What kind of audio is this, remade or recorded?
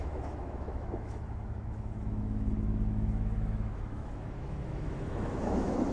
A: remade